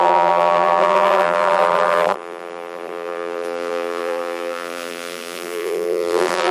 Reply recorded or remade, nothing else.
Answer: remade